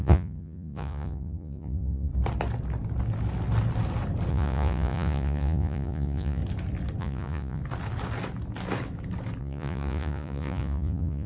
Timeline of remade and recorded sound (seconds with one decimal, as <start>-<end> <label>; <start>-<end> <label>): 0.0-2.1 remade; 2.1-4.3 recorded; 4.3-6.4 remade; 6.4-7.0 recorded; 7.0-7.6 remade; 7.6-9.4 recorded; 9.4-11.3 remade